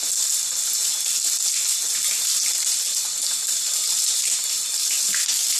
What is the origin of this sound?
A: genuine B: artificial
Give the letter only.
A